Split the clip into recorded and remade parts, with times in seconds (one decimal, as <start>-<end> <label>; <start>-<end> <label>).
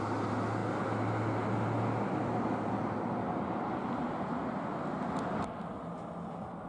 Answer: 0.0-6.7 recorded